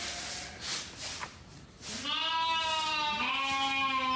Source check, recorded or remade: recorded